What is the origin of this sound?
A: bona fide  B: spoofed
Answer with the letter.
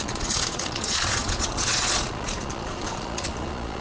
B